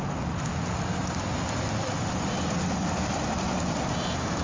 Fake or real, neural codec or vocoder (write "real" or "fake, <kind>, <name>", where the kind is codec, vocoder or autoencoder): real